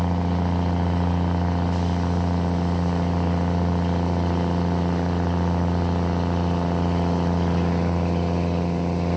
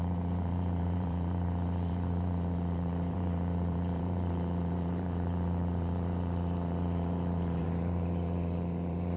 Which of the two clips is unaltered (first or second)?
first